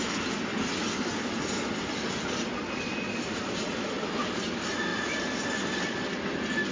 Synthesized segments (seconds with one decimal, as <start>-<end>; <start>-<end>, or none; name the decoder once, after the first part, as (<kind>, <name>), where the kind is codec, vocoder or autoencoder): none